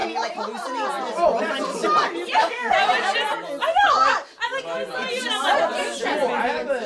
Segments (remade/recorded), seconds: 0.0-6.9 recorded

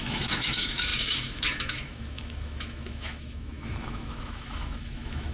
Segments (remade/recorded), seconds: 0.0-5.3 remade

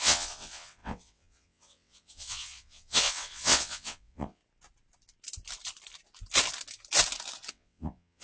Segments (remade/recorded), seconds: 0.0-4.4 remade; 4.4-7.5 recorded; 7.5-8.2 remade

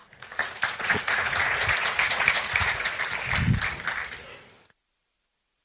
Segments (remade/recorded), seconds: 0.0-3.0 remade; 3.0-5.6 recorded